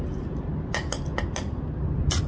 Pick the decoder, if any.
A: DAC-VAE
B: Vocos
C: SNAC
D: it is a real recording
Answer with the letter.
D